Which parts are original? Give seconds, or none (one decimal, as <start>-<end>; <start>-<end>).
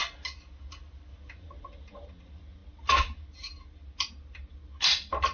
0.0-5.3